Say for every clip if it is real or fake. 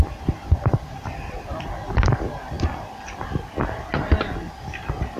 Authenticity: real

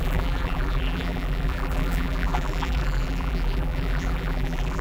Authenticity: fake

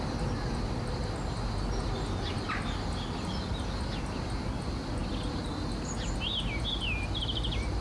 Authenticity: real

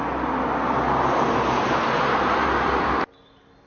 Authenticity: real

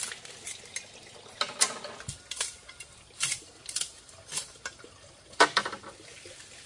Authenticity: real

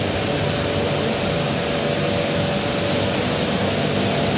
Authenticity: real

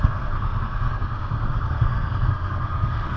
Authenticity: fake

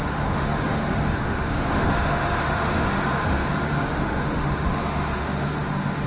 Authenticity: fake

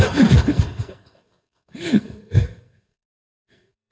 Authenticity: fake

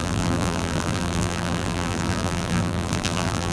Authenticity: fake